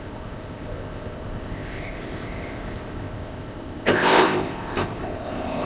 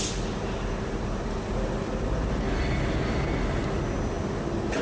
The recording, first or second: second